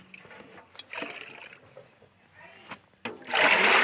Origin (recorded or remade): recorded